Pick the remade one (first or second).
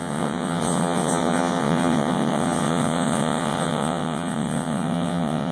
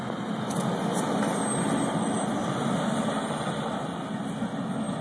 first